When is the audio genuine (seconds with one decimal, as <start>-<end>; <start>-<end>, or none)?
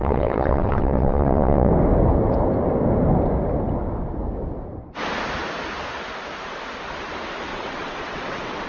1.7-7.5